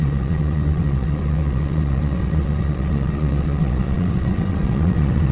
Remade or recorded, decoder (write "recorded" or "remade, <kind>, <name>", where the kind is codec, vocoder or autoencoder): remade, vocoder, WaveNeXt